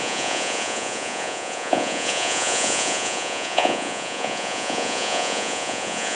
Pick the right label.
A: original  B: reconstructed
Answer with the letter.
B